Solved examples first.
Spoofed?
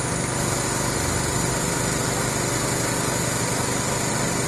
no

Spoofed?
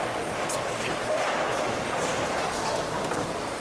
no